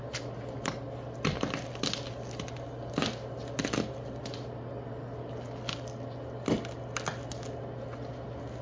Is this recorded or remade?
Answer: recorded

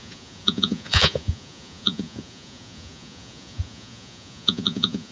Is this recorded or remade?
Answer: remade